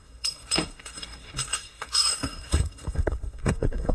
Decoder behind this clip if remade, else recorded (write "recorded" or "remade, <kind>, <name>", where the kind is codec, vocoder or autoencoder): remade, codec, SNAC